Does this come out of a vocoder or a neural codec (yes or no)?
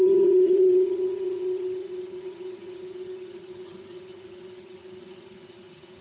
yes